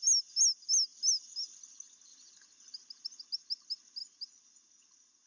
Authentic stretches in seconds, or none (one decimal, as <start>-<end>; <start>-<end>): 0.0-5.3